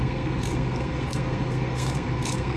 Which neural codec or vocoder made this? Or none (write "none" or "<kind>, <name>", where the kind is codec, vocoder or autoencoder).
codec, SNAC